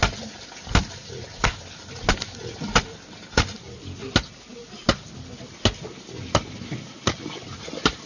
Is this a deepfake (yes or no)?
no